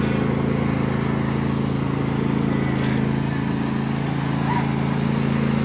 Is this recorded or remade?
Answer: recorded